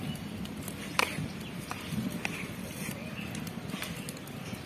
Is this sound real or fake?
fake